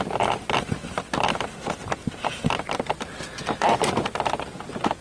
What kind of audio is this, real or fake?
real